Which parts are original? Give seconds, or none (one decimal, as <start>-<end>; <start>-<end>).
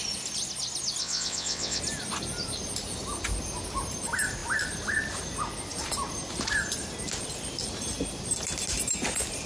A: 0.0-1.0; 1.8-9.5